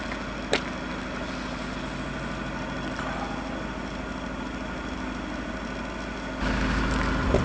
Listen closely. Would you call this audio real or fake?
real